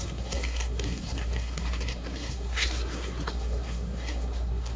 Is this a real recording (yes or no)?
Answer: no